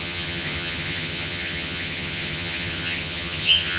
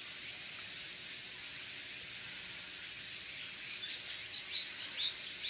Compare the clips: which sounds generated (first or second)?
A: first